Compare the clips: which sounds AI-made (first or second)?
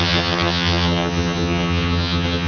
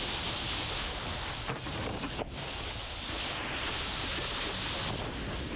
first